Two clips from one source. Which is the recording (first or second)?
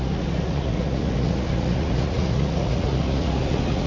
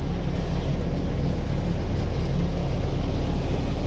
second